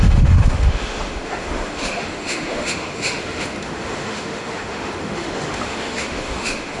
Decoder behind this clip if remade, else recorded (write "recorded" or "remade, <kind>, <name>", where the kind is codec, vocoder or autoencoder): remade, autoencoder, DAC-VAE